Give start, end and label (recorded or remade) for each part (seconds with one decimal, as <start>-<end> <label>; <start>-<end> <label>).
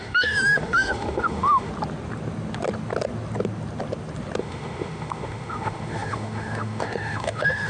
0.0-1.7 remade; 1.7-4.4 recorded; 4.4-7.7 remade